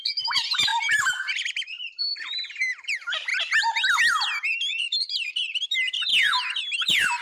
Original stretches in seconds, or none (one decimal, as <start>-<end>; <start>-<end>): 3.3-4.7; 6.1-6.6